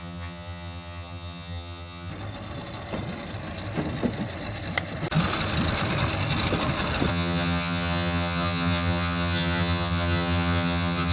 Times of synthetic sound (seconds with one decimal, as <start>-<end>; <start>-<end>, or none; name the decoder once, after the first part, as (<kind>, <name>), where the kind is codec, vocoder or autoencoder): 0.0-2.1 (vocoder, HiFi-GAN); 7.1-11.1